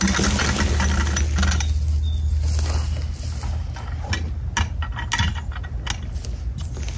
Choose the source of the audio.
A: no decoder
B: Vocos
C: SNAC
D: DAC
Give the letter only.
A